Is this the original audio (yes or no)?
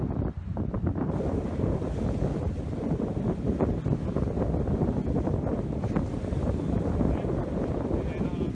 yes